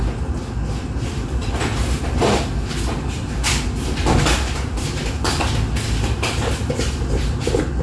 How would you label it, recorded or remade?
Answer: recorded